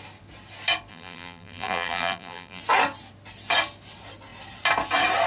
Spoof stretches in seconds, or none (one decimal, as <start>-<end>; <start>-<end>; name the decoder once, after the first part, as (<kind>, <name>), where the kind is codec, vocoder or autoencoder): 0.9-2.6 (vocoder, BigVGAN v2)